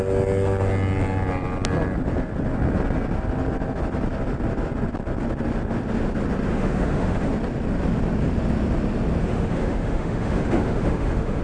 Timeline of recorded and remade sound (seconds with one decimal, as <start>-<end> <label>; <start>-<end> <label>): 0.0-6.5 recorded; 6.5-7.3 remade; 7.3-9.2 recorded; 9.2-11.4 remade